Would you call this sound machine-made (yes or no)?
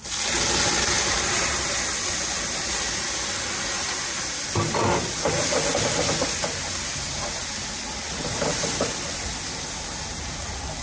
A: no